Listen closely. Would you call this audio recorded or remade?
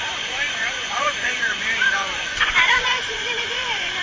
remade